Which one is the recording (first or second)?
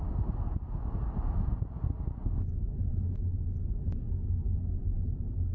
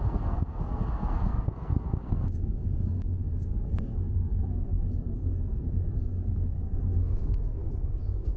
first